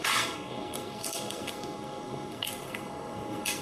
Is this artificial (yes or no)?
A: yes